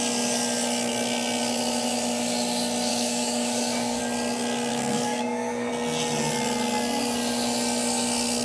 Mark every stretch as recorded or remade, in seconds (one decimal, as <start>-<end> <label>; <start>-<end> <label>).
0.0-2.9 recorded; 2.9-4.0 remade; 4.0-4.7 recorded; 4.7-5.7 remade; 5.7-8.4 recorded